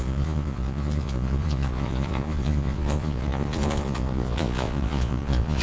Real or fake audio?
fake